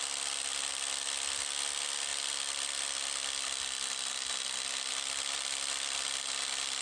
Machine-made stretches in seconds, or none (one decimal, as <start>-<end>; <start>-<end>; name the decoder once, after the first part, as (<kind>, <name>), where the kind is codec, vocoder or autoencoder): none